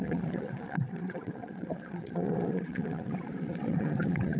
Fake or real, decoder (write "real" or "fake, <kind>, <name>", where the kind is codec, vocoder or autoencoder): fake, vocoder, Vocos